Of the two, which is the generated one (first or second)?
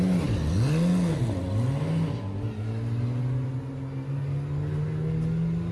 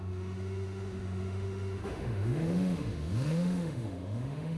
second